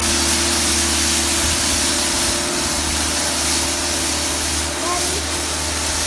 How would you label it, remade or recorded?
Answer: recorded